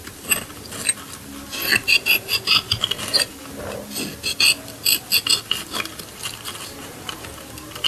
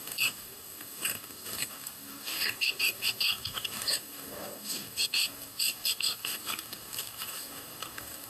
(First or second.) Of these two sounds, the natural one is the first